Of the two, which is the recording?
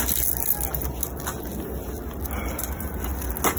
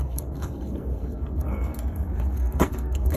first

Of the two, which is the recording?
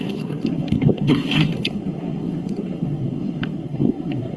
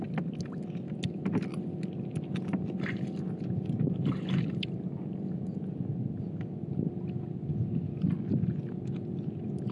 second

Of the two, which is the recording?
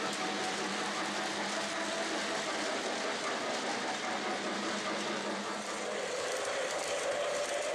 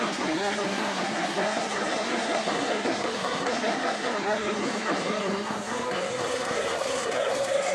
first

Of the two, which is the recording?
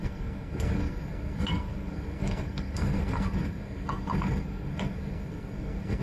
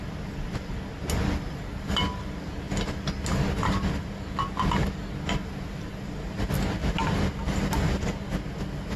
second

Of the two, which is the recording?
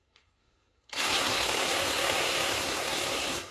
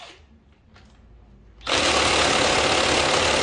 second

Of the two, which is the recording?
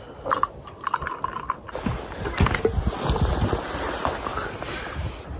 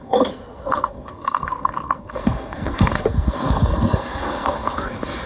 first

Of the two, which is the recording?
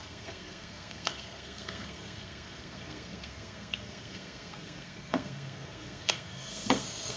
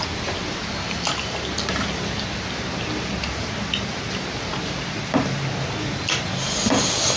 second